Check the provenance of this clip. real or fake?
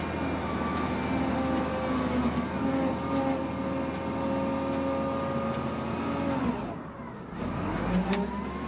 real